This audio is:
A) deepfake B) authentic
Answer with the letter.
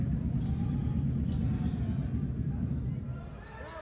B